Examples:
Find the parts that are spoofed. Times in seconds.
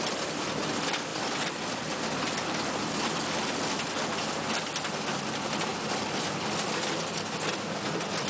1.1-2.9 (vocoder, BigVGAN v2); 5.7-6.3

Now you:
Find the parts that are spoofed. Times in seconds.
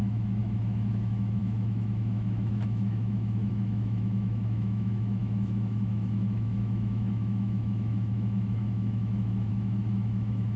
0.0-10.6 (autoencoder, DAC-VAE)